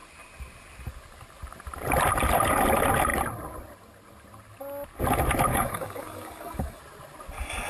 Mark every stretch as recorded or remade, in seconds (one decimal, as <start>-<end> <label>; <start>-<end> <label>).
0.0-5.5 recorded; 5.5-6.8 remade; 6.8-7.7 recorded